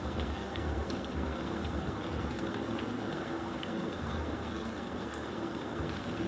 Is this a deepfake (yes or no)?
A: yes